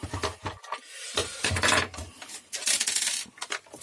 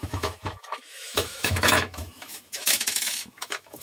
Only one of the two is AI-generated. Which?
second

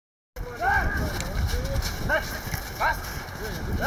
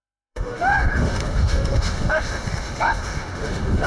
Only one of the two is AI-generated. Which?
second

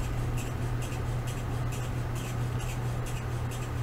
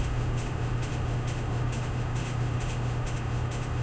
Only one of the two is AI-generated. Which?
second